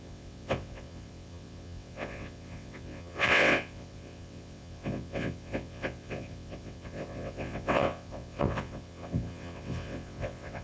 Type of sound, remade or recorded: remade